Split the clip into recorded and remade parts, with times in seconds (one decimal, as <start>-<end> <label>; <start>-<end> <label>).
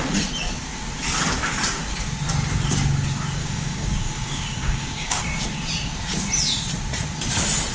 0.0-3.4 recorded; 3.4-5.2 remade; 5.2-7.7 recorded